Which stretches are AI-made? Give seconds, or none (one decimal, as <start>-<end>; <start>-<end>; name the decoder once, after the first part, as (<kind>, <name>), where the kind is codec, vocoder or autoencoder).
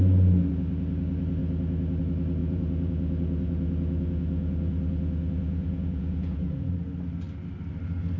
2.4-6.7 (vocoder, Vocos)